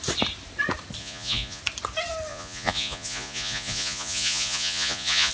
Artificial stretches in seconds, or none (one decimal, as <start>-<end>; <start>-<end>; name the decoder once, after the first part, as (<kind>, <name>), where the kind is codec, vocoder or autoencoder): 1.0-1.6 (vocoder, Vocos); 2.3-5.3